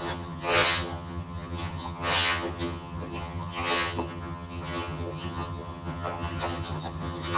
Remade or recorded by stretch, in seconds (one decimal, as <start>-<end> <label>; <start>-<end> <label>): 0.0-7.4 remade